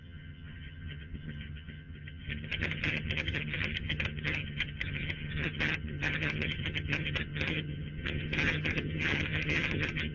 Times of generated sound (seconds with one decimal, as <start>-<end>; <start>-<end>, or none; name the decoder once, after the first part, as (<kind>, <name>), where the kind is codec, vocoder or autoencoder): 0.0-10.1 (vocoder, HiFi-GAN)